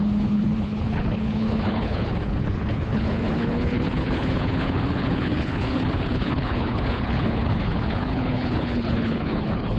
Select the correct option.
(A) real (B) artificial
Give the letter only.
B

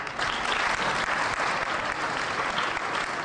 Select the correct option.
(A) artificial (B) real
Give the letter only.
B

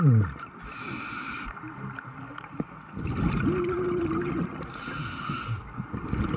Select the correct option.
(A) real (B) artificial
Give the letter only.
A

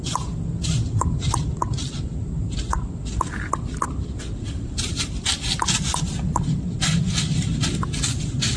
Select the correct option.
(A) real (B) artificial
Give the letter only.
A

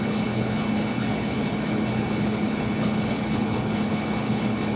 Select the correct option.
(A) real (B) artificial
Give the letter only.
B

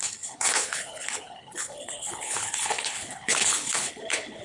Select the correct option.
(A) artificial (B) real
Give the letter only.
A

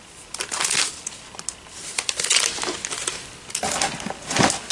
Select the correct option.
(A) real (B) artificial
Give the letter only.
A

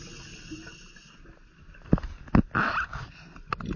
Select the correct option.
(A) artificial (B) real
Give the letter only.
B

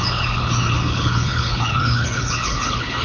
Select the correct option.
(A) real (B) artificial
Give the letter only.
B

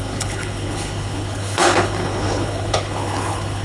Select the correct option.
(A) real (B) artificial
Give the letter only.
B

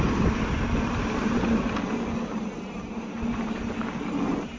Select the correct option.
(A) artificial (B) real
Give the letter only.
B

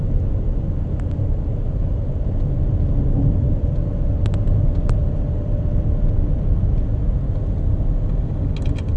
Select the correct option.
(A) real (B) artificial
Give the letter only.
A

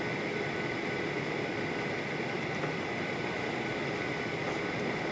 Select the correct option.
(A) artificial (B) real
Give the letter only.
B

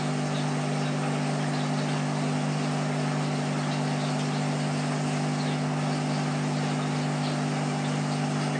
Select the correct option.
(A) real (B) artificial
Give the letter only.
A